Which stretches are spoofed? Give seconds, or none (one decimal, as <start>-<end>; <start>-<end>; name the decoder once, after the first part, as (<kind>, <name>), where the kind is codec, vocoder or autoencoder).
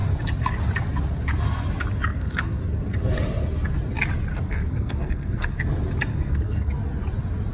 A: 2.1-2.6 (codec, SNAC); 4.3-5.5; 6.1-6.7